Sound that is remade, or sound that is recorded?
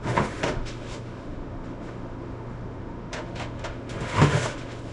remade